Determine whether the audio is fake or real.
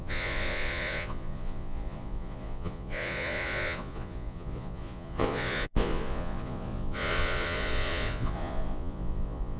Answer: fake